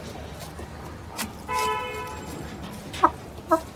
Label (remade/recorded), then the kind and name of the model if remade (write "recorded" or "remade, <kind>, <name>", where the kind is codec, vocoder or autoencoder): recorded